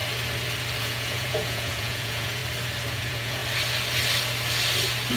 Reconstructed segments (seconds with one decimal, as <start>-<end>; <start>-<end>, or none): 0.8-2.4; 2.9-3.4